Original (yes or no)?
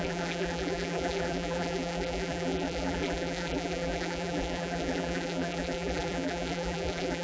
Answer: no